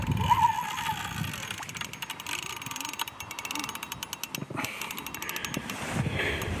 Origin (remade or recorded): recorded